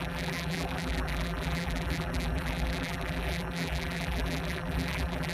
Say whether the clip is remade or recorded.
remade